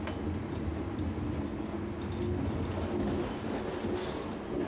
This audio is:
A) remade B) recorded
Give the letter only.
B